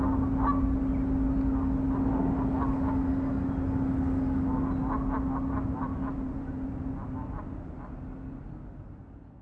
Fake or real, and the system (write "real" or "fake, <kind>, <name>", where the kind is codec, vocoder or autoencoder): real